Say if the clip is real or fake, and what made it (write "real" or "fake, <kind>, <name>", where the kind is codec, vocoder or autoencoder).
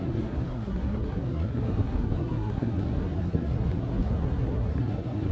fake, codec, SNAC